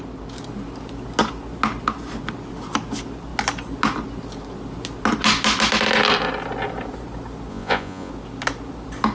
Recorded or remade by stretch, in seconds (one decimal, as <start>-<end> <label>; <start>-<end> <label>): 0.0-7.5 recorded; 7.5-8.1 remade; 8.1-9.1 recorded